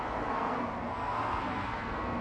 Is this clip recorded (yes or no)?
no